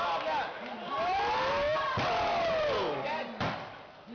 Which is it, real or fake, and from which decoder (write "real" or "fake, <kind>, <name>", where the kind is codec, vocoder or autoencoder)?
real